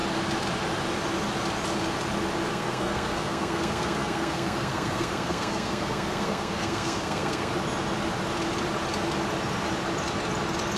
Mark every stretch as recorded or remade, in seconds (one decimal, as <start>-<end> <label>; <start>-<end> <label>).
0.0-2.5 recorded; 2.5-7.5 remade; 7.5-10.8 recorded